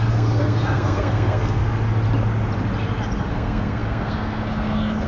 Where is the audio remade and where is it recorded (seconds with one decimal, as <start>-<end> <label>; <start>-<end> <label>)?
0.0-1.6 remade; 1.6-3.2 recorded; 3.2-5.1 remade